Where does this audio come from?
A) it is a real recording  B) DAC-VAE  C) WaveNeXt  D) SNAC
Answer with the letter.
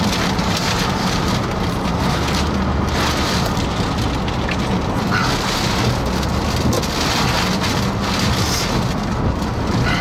A